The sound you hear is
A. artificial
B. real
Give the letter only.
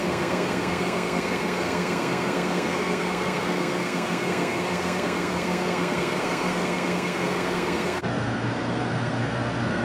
A